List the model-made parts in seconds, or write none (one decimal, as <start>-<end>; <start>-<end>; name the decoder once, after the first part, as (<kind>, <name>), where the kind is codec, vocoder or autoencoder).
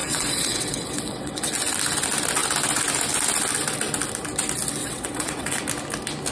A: 0.0-1.5 (vocoder, WaveNeXt); 4.8-5.6